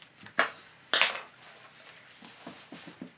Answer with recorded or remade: recorded